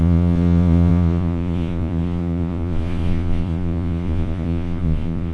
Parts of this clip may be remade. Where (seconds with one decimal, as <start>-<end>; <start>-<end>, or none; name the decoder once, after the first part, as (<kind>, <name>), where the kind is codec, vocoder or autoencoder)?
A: 0.0-5.3 (vocoder, Vocos)